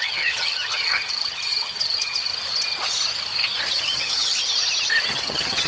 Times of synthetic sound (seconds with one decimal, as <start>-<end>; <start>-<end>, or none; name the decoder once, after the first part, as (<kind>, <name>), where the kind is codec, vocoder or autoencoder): 0.0-2.3 (vocoder, HiFi-GAN); 3.7-4.3; 5.1-5.7